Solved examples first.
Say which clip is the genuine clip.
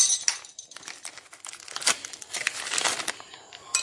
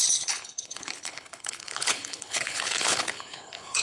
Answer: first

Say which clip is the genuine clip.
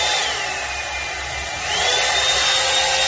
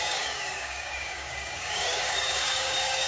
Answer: first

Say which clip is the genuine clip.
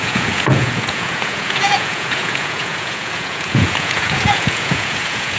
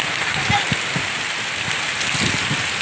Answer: second